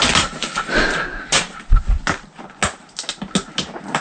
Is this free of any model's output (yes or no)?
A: yes